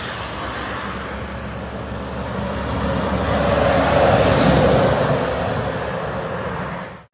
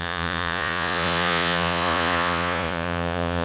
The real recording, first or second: first